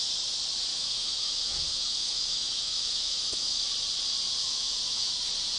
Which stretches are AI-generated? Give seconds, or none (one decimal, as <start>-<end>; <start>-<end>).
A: 0.7-3.6; 4.4-5.1